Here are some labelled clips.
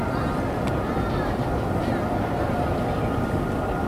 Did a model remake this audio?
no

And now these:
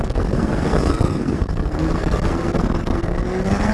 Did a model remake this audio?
yes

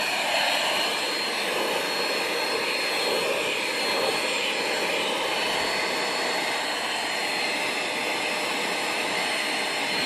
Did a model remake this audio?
no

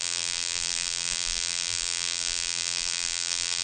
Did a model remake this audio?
yes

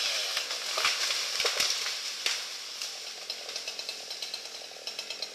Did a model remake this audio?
no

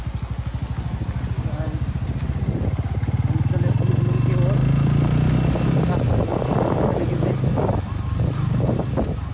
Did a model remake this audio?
no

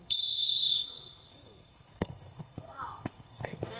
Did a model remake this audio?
yes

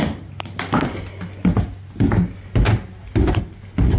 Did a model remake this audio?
no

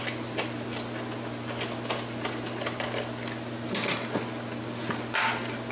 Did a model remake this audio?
no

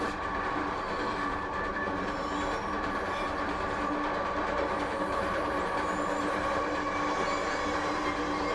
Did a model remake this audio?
yes